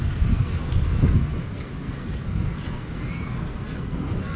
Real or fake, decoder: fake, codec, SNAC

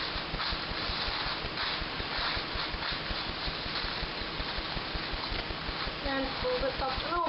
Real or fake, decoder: real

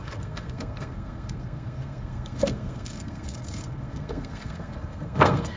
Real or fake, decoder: fake, codec, SNAC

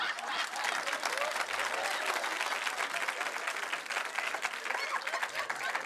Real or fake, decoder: real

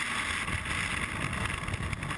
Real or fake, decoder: real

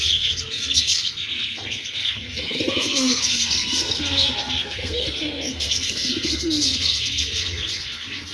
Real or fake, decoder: fake, codec, SNAC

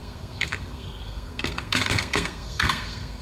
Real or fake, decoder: fake, codec, SNAC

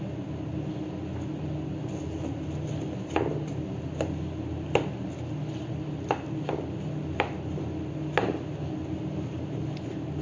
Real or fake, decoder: real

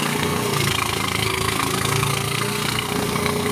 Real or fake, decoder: fake, codec, SNAC